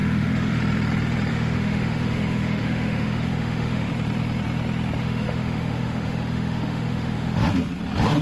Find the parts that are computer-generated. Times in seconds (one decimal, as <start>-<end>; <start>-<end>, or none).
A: 0.0-0.6; 1.3-3.9; 5.0-7.5